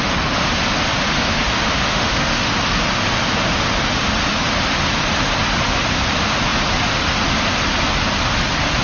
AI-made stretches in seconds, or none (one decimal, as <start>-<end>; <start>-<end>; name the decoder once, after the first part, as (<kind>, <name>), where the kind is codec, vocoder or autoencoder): 1.8-2.5 (autoencoder, DAC-VAE)

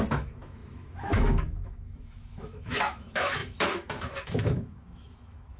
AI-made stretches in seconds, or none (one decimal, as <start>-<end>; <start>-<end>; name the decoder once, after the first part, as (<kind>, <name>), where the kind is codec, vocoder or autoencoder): 0.0-5.6 (autoencoder, DAC-VAE)

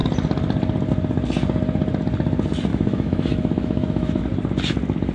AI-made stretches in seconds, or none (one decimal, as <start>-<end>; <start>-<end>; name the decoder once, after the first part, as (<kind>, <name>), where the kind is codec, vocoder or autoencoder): 2.7-4.2 (autoencoder, DAC-VAE)

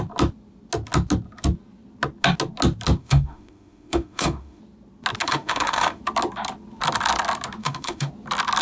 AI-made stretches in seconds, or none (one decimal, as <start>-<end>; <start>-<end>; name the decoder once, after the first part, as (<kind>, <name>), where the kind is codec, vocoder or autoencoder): 3.0-4.6 (autoencoder, DAC-VAE); 5.2-6.0; 7.6-8.1

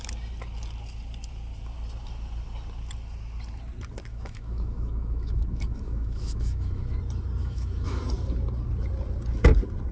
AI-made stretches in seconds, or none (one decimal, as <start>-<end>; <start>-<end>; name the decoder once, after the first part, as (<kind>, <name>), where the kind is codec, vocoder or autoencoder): 4.1-7.0 (autoencoder, DAC-VAE); 7.4-8.0

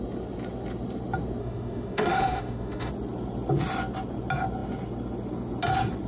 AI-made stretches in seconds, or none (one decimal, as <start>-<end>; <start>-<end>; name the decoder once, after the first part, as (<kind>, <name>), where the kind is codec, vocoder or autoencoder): 1.4-2.9 (autoencoder, DAC-VAE)

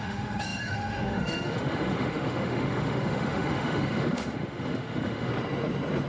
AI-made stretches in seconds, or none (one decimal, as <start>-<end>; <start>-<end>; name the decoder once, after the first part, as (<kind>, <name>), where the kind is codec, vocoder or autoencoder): 0.0-5.3 (autoencoder, DAC-VAE)

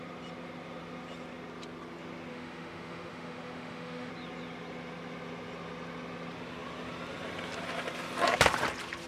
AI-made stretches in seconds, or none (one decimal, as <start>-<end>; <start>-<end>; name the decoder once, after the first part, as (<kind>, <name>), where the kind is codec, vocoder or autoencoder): 2.3-4.1 (autoencoder, DAC-VAE)